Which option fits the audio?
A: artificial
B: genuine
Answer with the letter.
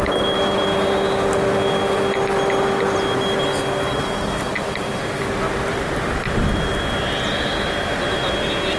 B